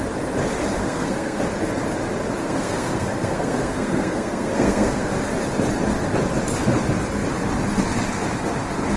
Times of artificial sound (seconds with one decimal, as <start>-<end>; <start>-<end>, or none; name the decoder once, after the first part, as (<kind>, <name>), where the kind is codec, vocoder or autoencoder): 0.8-1.4 (codec, SNAC); 2.4-5.1